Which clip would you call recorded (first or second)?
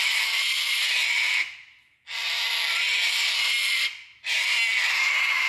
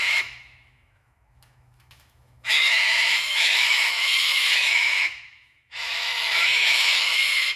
first